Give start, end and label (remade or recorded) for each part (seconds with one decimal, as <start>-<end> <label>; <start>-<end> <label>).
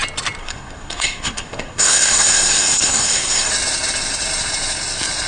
0.0-0.4 recorded; 0.4-3.5 remade; 3.5-5.3 recorded